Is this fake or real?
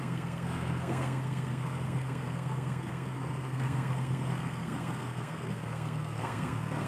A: fake